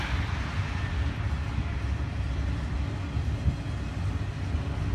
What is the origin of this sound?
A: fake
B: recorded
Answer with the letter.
B